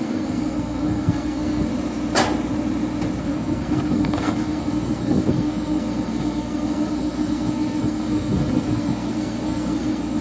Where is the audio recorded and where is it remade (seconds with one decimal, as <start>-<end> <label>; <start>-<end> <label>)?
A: 0.0-1.7 remade; 1.7-3.2 recorded; 3.2-10.2 remade